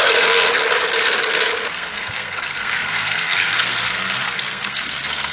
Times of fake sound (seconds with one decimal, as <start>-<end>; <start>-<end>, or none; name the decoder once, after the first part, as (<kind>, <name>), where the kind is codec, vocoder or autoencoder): 0.0-0.5 (codec, SNAC); 1.7-5.3